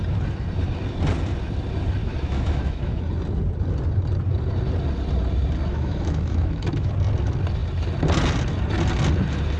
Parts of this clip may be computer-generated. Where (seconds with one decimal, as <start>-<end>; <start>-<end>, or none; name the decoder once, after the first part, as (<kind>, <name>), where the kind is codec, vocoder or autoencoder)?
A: 2.0-3.0 (autoencoder, DAC-VAE); 5.7-6.9